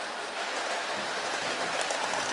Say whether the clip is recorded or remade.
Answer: recorded